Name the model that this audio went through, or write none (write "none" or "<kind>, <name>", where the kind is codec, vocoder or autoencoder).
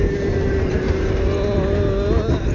none